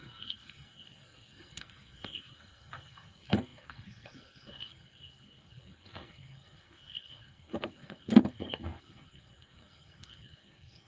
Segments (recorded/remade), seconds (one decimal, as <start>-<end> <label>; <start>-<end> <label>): 0.0-10.9 remade

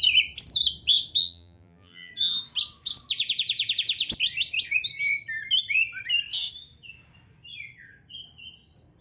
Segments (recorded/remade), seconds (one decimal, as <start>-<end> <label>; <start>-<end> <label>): 0.0-1.2 recorded; 1.2-2.1 remade; 2.1-9.0 recorded

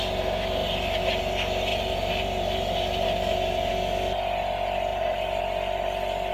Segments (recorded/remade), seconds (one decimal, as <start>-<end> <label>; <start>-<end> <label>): 0.0-0.6 recorded; 0.6-1.2 remade; 1.2-1.7 recorded; 1.7-3.7 remade; 3.7-4.9 recorded; 4.9-5.4 remade; 5.4-6.3 recorded

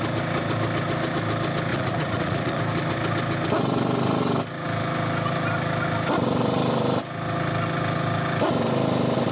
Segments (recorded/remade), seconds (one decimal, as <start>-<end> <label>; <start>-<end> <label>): 0.0-1.7 recorded; 1.7-2.6 remade; 2.6-9.3 recorded

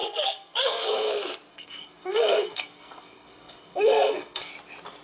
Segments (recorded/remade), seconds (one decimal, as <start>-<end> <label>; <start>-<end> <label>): 0.0-1.1 remade; 1.1-1.5 recorded; 1.5-4.5 remade; 4.5-5.0 recorded

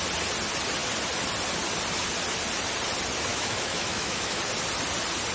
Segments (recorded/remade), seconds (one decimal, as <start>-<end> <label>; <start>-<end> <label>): 0.0-3.3 recorded; 3.3-4.4 remade; 4.4-5.3 recorded

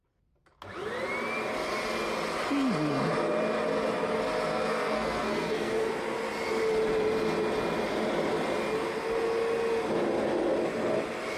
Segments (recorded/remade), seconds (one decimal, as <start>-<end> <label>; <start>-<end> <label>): 0.0-4.5 recorded; 4.5-5.9 remade; 5.9-11.4 recorded

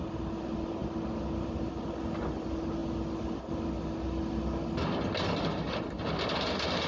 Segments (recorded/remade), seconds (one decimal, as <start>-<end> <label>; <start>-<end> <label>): 0.0-6.9 recorded